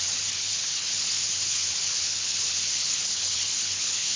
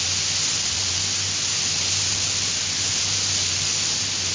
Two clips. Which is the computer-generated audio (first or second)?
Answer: first